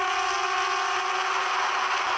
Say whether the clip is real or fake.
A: real